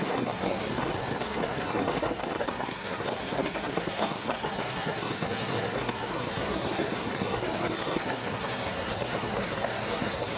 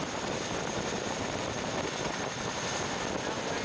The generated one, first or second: first